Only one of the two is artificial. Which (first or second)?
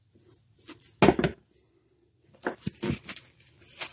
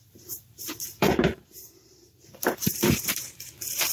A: second